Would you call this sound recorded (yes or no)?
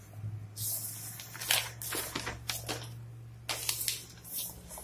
yes